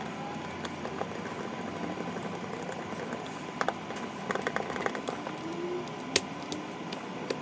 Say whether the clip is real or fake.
real